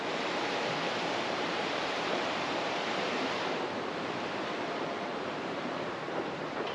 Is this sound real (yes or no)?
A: no